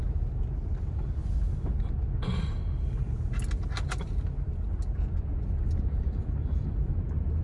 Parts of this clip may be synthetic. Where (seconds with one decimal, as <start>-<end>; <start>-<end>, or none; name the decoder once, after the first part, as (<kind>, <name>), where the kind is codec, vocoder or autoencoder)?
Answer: none

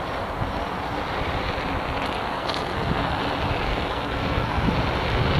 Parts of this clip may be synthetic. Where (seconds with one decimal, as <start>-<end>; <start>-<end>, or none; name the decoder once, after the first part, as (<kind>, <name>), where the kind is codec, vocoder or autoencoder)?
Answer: 2.2-3.2 (codec, SNAC); 3.7-4.7

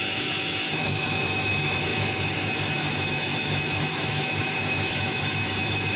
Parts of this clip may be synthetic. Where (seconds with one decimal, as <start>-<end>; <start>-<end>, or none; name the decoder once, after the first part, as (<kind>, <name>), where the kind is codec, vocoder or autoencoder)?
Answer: 0.0-6.0 (autoencoder, DAC-VAE)

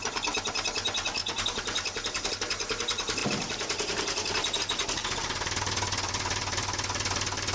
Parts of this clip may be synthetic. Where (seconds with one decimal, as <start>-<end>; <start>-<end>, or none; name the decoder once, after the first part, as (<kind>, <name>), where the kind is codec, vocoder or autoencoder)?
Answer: 1.2-2.3 (vocoder, BigVGAN v2); 3.2-4.6

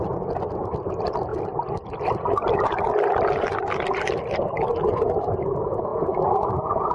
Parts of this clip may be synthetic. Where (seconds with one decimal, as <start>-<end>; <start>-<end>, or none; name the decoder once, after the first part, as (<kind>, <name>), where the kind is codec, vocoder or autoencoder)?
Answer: none

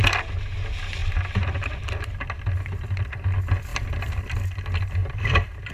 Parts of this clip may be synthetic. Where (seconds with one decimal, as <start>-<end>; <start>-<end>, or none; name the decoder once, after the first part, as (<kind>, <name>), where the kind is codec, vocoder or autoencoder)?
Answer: 1.0-2.4 (vocoder, BigVGAN v2); 5.0-5.7

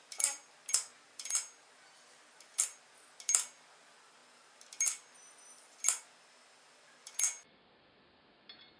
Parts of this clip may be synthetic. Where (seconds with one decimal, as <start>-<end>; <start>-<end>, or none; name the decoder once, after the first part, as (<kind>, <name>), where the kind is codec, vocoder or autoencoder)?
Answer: none

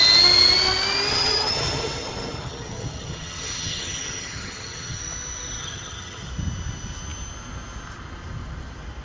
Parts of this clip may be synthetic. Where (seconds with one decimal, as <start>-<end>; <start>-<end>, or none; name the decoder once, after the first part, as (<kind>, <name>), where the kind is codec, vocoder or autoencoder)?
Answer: 1.1-5.0 (vocoder, HiFi-GAN); 5.6-6.3